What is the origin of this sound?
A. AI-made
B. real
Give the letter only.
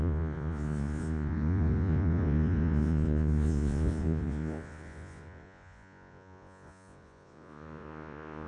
A